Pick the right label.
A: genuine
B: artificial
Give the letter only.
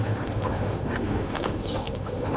B